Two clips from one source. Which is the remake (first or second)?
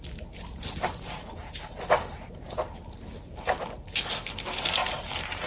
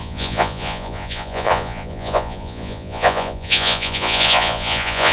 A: second